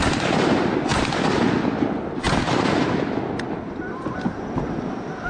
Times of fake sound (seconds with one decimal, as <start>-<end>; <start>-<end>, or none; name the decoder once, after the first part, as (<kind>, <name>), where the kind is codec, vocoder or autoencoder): none